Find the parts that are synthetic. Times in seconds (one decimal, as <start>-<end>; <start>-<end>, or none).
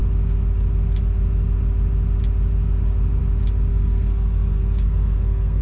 3.7-5.6